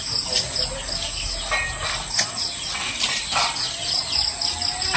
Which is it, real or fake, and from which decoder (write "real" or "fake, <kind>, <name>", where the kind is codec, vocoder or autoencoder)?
real